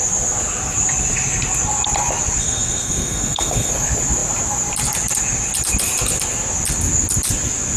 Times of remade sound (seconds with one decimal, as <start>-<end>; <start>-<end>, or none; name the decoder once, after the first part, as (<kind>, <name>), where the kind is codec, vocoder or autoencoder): 2.4-3.7 (codec, SNAC)